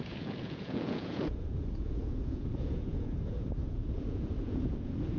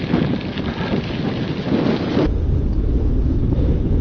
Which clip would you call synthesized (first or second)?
first